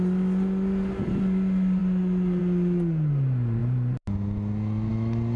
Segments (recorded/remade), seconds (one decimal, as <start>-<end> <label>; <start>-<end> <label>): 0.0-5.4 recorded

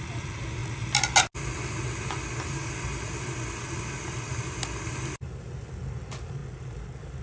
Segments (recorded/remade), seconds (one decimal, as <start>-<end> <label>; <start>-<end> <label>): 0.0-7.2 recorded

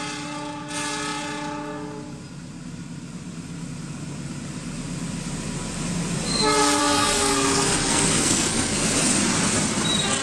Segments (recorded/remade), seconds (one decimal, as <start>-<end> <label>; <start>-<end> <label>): 0.0-6.8 recorded; 6.8-8.9 remade; 8.9-10.2 recorded

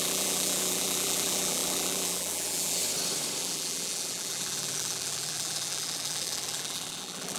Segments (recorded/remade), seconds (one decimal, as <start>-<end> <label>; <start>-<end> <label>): 0.0-2.8 remade; 2.8-3.4 recorded; 3.4-7.4 remade

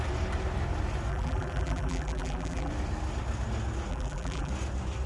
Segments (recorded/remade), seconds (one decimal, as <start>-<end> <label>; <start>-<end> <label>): 0.0-1.1 recorded; 1.1-2.7 remade; 2.7-3.9 recorded; 3.9-4.5 remade; 4.5-5.1 recorded

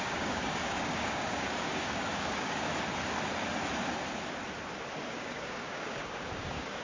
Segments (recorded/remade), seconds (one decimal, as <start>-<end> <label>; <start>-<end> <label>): 0.0-2.7 remade; 2.7-5.1 recorded; 5.1-6.8 remade

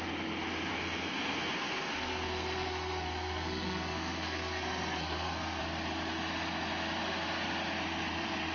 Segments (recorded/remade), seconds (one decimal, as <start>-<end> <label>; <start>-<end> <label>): 0.0-0.7 recorded; 0.7-5.6 remade; 5.6-8.5 recorded

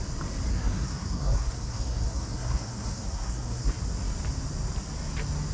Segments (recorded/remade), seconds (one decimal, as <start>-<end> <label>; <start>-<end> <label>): 0.0-0.5 recorded; 0.5-3.8 remade; 3.8-5.5 recorded